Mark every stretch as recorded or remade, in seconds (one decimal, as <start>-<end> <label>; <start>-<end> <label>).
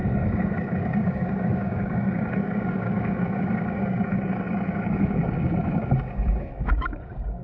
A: 0.0-7.4 remade